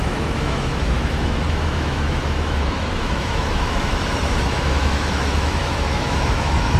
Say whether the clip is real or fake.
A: fake